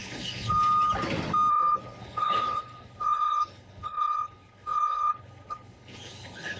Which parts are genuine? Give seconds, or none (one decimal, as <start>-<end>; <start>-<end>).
0.5-1.5